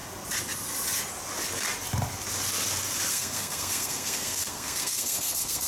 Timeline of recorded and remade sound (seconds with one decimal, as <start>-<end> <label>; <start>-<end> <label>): 0.0-3.1 recorded; 3.1-5.7 remade